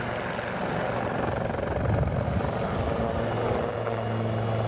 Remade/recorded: recorded